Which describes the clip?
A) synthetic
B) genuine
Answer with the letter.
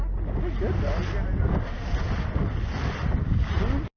B